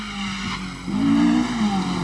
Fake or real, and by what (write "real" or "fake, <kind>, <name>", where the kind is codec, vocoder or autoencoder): real